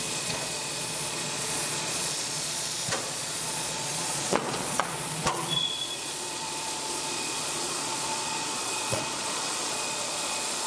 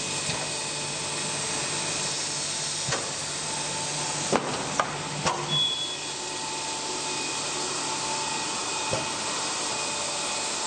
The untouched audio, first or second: second